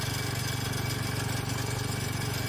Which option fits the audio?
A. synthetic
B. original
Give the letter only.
B